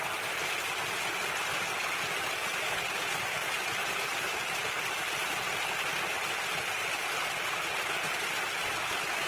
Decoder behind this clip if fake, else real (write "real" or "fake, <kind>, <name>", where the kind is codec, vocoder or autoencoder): real